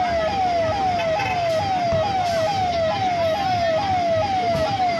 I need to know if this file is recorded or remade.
recorded